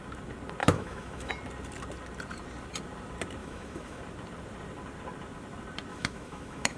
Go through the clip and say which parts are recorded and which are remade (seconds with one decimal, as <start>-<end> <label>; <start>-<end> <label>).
0.0-0.6 recorded; 0.6-1.3 remade; 1.3-3.4 recorded; 3.4-4.0 remade; 4.0-5.9 recorded; 5.9-6.8 remade